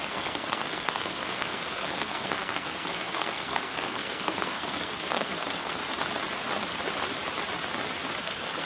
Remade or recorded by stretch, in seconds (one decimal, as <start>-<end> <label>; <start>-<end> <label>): 0.0-5.8 remade; 5.8-8.2 recorded; 8.2-8.7 remade